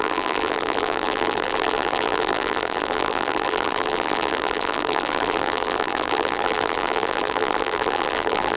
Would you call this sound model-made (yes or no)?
yes